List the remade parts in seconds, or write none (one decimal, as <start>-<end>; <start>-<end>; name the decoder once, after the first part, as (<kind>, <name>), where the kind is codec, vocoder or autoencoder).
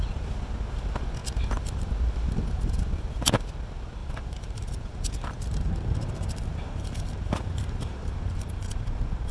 4.0-9.3 (vocoder, BigVGAN v2)